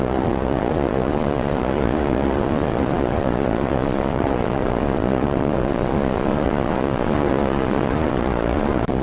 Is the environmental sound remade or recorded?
remade